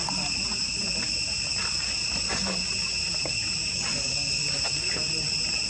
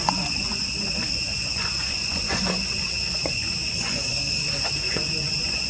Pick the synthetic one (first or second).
second